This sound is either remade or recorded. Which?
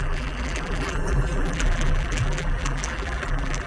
remade